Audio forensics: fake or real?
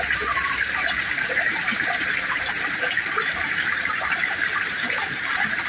fake